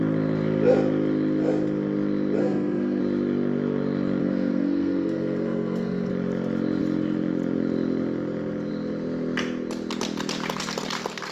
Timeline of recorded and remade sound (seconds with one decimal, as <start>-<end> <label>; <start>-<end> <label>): 0.0-2.4 recorded; 2.4-3.0 remade; 3.0-4.2 recorded; 4.2-6.1 remade; 6.1-11.3 recorded